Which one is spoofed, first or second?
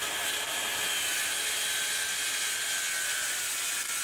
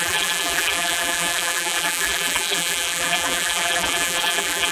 second